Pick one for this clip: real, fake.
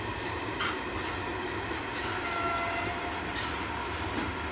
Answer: real